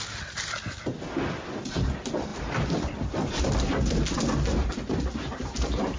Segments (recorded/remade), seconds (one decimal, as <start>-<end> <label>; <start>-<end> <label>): 0.0-5.3 recorded; 5.3-6.0 remade